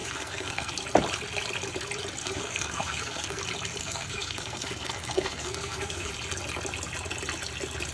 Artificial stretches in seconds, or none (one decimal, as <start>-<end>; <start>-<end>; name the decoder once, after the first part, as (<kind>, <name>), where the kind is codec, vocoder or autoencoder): 0.0-0.7 (codec, SNAC); 2.2-3.4; 3.8-6.1